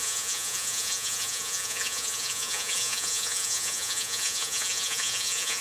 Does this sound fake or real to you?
fake